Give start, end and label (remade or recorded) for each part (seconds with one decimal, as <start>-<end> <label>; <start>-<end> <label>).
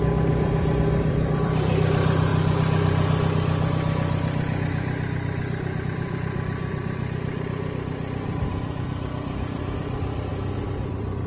0.0-2.3 remade; 2.3-5.8 recorded; 5.8-10.3 remade; 10.3-10.9 recorded; 10.9-11.3 remade